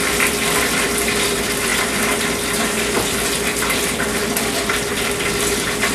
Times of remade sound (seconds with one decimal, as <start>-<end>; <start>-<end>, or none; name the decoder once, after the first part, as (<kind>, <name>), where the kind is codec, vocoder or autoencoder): 0.0-5.9 (vocoder, BigVGAN v2)